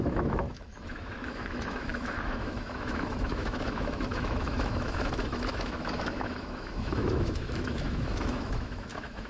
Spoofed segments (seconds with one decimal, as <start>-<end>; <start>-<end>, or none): 0.0-9.3